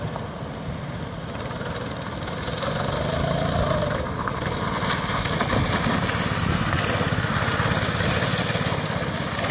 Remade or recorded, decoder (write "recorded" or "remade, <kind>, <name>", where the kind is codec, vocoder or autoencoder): recorded